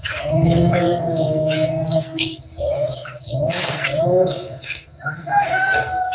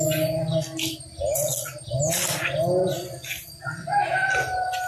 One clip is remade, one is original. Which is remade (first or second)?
first